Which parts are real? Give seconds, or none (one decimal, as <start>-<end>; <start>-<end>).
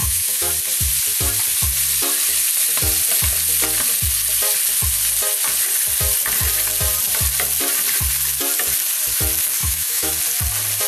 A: 0.5-9.6; 10.1-10.9